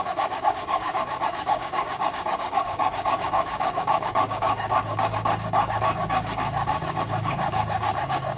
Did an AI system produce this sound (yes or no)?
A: yes